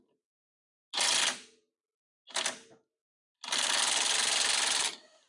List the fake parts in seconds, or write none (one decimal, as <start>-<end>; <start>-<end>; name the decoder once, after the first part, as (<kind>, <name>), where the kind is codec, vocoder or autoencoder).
none